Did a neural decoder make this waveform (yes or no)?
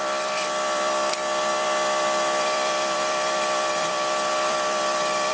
yes